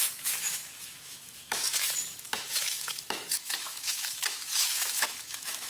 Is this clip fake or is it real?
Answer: fake